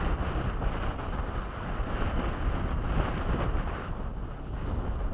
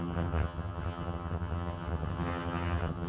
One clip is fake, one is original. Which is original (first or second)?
first